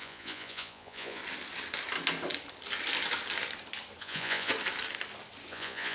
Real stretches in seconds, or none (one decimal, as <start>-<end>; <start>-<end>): 1.2-4.0; 4.5-5.5